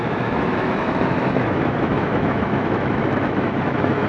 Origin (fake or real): fake